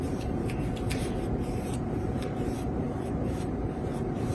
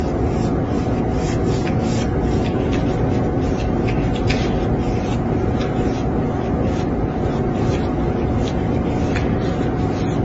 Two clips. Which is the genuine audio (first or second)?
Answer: second